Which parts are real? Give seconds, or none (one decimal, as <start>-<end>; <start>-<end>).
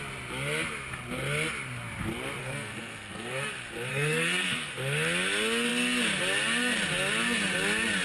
0.0-2.4; 3.5-3.9; 4.7-8.0